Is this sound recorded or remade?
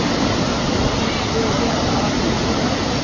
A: recorded